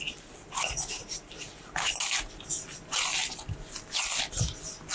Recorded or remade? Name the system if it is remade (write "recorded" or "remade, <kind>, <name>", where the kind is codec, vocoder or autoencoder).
recorded